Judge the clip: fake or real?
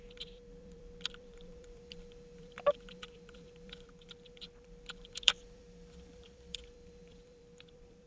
fake